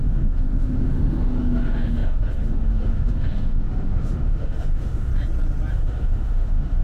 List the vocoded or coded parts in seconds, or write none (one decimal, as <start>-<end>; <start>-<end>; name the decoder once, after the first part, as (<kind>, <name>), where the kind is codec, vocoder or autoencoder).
0.0-5.1 (autoencoder, DAC-VAE); 5.7-6.8